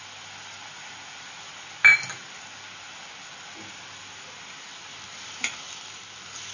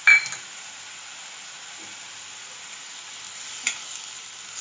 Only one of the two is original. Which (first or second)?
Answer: first